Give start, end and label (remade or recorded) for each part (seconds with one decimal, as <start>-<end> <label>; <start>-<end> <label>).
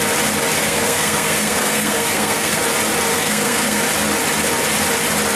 0.0-0.6 recorded; 0.6-2.6 remade; 2.6-3.1 recorded; 3.1-3.8 remade; 3.8-5.4 recorded